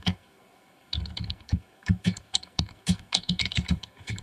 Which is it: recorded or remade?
remade